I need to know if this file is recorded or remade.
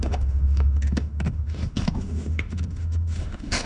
remade